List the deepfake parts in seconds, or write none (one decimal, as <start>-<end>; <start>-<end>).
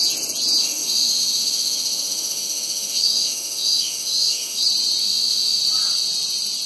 0.6-4.6; 5.0-5.6